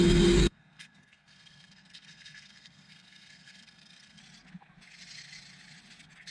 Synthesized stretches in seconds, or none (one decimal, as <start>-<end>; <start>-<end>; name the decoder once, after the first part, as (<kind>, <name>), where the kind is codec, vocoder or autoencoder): 0.4-4.2 (codec, SNAC)